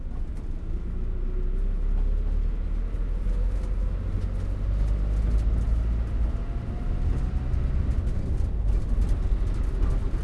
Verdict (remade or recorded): recorded